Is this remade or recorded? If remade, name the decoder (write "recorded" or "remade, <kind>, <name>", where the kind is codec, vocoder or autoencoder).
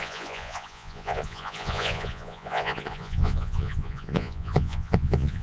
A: remade, vocoder, Vocos